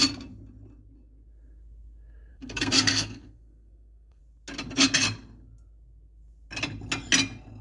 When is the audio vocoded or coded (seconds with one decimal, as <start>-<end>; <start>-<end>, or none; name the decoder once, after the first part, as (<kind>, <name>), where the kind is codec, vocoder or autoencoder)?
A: 2.3-4.2 (codec, SNAC)

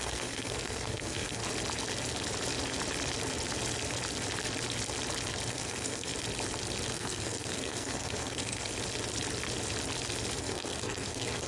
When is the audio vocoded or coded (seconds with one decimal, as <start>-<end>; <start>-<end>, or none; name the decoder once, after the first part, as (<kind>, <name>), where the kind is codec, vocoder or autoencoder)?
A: 0.0-1.4 (codec, SNAC); 5.5-6.1; 6.9-8.7; 10.4-11.5

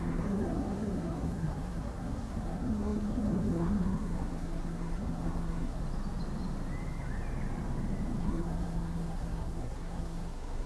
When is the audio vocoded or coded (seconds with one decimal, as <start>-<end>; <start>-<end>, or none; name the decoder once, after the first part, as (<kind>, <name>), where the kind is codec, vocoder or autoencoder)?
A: 0.0-5.8 (codec, SNAC); 8.2-10.7

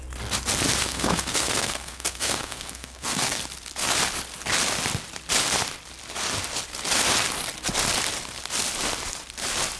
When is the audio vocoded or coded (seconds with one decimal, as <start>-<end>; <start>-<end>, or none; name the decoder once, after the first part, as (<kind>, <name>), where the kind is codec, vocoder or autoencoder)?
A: 0.8-3.4 (codec, SNAC)

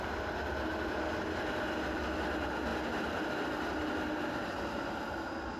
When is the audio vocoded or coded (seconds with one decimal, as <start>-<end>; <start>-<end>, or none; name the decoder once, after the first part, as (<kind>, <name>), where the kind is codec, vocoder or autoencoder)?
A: none

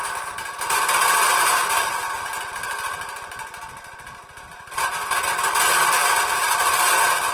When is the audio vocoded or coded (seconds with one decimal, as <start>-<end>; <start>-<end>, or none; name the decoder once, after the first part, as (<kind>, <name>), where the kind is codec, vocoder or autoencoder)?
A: none

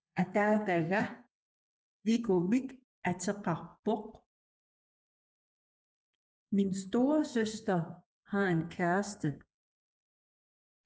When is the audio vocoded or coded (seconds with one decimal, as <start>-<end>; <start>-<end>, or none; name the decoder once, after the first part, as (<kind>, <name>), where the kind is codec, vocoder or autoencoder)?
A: 0.0-2.7 (codec, SNAC); 5.8-6.7; 7.2-10.1

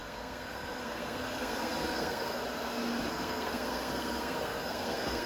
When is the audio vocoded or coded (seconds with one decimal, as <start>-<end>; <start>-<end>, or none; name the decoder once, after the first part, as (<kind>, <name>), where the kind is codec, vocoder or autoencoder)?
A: 0.0-2.4 (codec, SNAC); 3.1-5.3